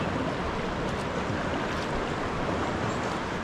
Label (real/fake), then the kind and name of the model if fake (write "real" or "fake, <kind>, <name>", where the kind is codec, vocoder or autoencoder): real